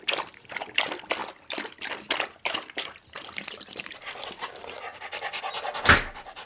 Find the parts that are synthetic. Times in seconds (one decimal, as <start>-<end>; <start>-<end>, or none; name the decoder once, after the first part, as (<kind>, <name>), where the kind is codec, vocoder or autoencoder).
1.2-4.2 (vocoder, BigVGAN v2); 4.9-5.4